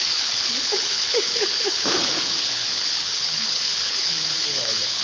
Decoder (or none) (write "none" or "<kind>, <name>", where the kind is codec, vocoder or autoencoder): codec, HILCodec